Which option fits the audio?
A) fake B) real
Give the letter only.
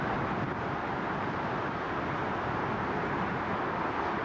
B